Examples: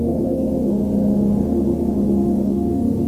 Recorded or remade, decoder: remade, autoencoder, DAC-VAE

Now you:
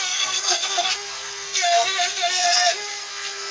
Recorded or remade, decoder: remade, codec, SNAC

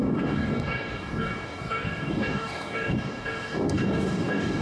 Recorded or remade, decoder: remade, codec, DAC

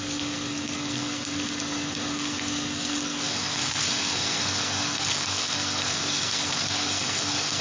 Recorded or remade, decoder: remade, codec, SNAC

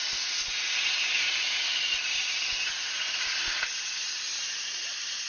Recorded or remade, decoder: remade, vocoder, BigVGAN v2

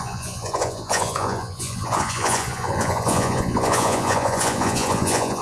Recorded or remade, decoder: remade, vocoder, Vocos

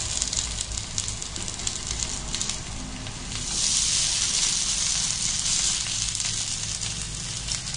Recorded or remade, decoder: recorded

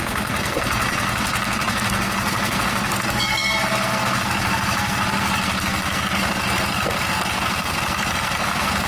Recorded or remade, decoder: remade, codec, SNAC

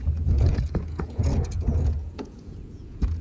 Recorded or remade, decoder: remade, vocoder, Vocos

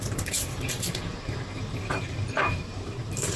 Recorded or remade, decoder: remade, vocoder, BigVGAN v2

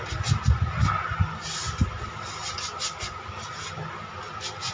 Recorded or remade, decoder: recorded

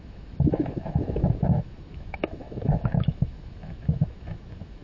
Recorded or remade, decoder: remade, autoencoder, DAC-VAE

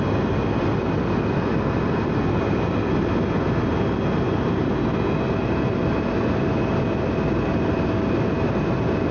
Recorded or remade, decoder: recorded